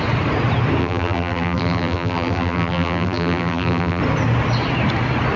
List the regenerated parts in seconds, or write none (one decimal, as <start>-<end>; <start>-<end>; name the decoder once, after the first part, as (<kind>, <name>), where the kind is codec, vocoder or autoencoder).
0.8-4.0 (vocoder, BigVGAN v2)